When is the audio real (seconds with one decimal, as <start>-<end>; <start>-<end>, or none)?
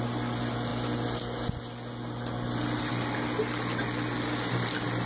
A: 0.0-5.1